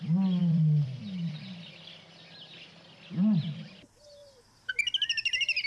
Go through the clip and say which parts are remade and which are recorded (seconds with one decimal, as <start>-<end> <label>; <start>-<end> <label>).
0.0-0.4 recorded; 0.4-2.2 remade; 2.2-4.2 recorded; 4.2-4.7 remade; 4.7-5.7 recorded